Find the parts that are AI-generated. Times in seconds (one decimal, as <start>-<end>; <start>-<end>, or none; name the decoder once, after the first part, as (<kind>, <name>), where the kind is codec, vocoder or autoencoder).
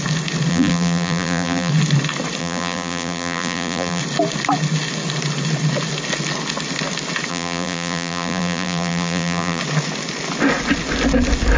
0.5-1.7 (vocoder, BigVGAN v2); 2.4-4.0; 7.3-9.6